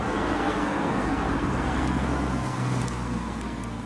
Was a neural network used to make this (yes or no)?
yes